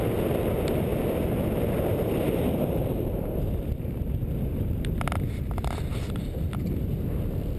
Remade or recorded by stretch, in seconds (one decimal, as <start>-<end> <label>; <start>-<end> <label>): 0.0-7.6 recorded